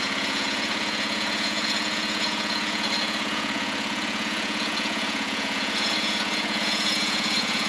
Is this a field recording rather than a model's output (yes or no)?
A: no